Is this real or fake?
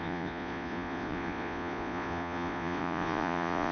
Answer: fake